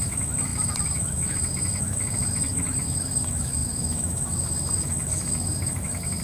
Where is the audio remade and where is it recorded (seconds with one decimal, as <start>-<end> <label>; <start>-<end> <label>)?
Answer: 0.0-6.2 remade